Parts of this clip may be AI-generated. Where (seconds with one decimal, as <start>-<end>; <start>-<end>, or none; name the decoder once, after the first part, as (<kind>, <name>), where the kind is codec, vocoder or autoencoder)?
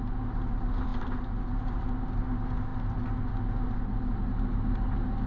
none